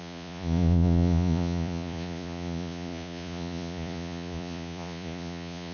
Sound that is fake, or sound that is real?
fake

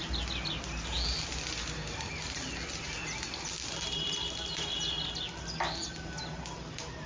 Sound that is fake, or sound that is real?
real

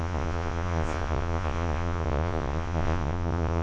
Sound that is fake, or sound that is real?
fake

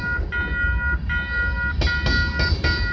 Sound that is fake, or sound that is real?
real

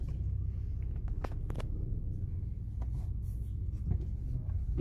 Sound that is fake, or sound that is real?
real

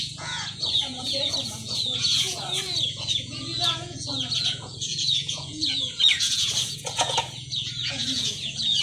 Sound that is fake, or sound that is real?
fake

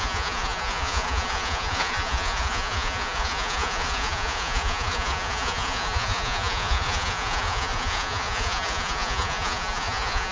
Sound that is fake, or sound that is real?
fake